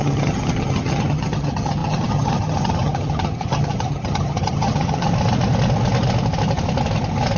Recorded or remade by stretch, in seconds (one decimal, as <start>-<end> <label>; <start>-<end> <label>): 0.0-5.1 remade; 5.1-7.4 recorded